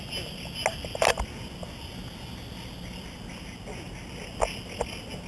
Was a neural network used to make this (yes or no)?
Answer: no